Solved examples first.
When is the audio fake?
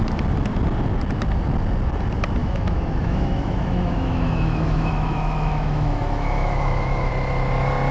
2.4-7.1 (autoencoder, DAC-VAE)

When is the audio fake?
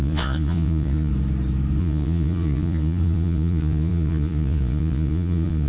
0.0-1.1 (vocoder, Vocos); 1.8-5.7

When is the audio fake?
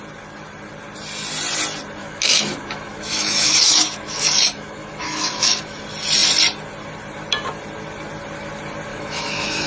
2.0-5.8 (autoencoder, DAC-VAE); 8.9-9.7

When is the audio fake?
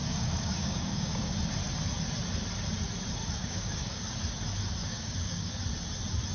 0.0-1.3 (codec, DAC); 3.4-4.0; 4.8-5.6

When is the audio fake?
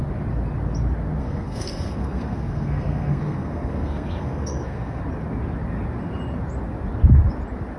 1.2-5.0 (codec, SNAC)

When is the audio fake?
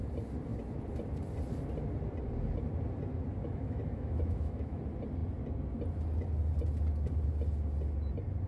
3.4-4.8 (autoencoder, DAC-VAE)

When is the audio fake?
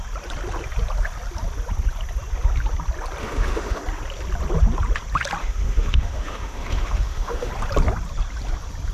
3.2-3.8 (autoencoder, DAC-VAE); 5.4-7.5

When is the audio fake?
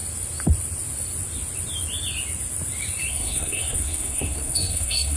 3.1-5.2 (codec, SNAC)